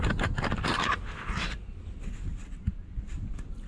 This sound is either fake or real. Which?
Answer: real